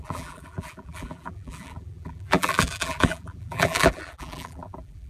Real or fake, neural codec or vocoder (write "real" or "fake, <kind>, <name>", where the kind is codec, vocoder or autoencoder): fake, vocoder, BigVGAN v2